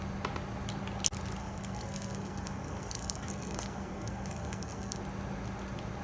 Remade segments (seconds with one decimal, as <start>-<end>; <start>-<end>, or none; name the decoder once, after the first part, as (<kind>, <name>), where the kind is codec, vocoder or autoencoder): 1.4-5.0 (codec, SNAC)